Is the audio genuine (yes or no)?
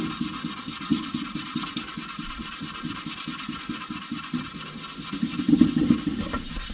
yes